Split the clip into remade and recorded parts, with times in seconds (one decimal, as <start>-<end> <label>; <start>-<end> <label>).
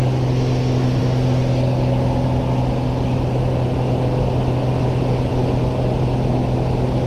0.0-7.1 recorded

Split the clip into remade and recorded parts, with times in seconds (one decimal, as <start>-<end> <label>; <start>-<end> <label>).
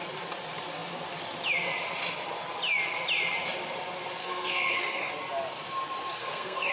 0.0-4.2 recorded; 4.2-5.1 remade; 5.1-6.2 recorded; 6.2-6.7 remade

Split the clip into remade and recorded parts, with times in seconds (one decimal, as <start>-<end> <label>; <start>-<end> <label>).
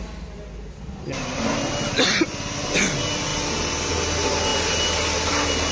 0.0-5.7 recorded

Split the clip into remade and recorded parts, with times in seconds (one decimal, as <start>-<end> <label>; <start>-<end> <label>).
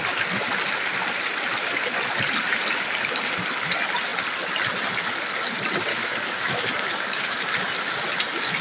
0.0-5.9 recorded; 5.9-7.6 remade; 7.6-8.6 recorded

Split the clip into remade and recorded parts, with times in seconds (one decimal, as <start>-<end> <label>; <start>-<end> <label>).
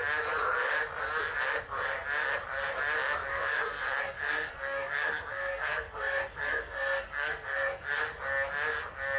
0.0-3.3 recorded; 3.3-8.0 remade; 8.0-9.2 recorded